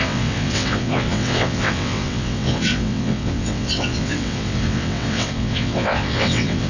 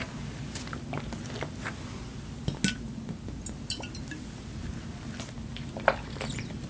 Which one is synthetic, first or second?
first